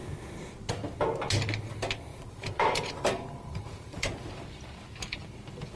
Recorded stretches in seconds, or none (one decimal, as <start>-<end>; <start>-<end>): 0.0-2.1; 4.3-5.8